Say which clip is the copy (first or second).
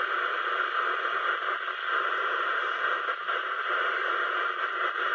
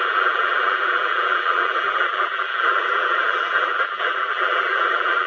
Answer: second